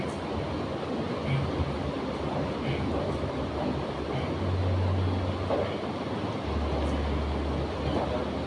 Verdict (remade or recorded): recorded